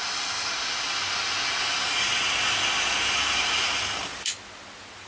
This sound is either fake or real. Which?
real